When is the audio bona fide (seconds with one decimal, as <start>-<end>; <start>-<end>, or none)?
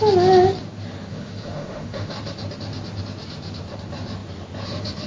0.0-1.1; 2.1-5.1